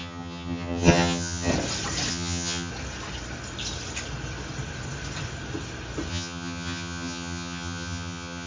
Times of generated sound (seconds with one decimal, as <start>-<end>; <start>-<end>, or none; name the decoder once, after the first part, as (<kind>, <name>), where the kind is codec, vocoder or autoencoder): 0.0-1.5 (vocoder, HiFi-GAN); 2.1-2.7; 6.1-8.5